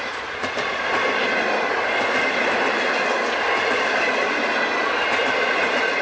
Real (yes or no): yes